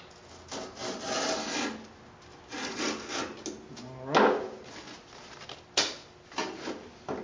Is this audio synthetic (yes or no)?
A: no